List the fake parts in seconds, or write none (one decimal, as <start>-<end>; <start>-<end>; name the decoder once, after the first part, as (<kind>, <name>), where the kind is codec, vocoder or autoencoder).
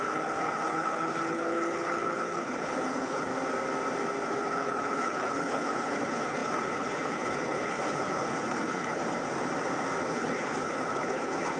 0.0-3.3 (codec, HILCodec); 4.3-9.0; 10.0-11.6